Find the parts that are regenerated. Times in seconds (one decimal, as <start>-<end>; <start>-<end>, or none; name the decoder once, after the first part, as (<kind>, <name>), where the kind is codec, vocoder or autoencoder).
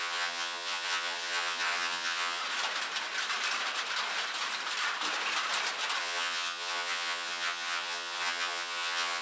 0.0-2.4 (vocoder, HiFi-GAN); 6.0-9.2